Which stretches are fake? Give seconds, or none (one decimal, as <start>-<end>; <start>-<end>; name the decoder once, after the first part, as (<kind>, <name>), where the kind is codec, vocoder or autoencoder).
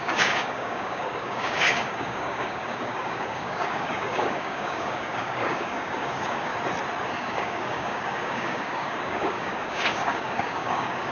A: 0.0-6.5 (codec, DAC); 7.1-11.1